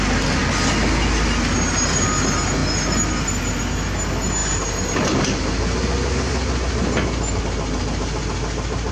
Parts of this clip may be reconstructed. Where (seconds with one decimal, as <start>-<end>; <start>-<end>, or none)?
none